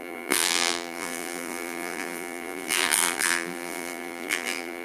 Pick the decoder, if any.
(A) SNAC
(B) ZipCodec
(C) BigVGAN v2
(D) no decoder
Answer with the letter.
C